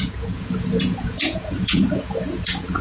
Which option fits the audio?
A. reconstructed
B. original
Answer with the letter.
A